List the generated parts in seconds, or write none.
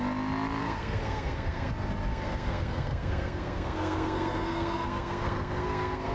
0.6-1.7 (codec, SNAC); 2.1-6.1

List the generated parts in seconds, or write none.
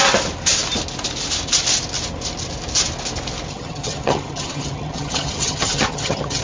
3.5-6.4 (vocoder, HiFi-GAN)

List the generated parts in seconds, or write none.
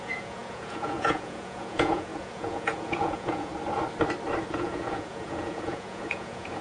0.0-3.5 (vocoder, Vocos); 4.5-6.6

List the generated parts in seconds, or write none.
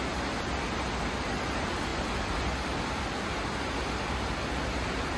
none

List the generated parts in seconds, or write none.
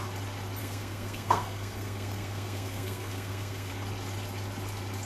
0.6-3.7 (codec, SNAC)